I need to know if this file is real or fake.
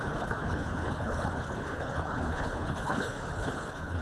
fake